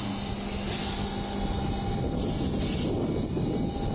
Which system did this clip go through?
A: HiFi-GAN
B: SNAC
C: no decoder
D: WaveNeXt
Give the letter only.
C